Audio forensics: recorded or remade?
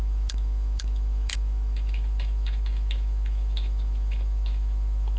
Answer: remade